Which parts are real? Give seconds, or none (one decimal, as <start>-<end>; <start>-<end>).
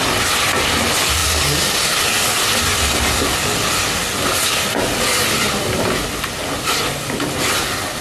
0.0-8.0